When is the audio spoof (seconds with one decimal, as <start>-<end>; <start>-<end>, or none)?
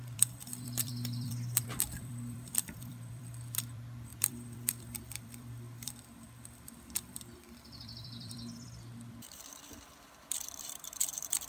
0.0-11.5